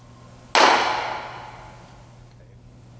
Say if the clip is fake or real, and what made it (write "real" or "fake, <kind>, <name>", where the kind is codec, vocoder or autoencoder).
real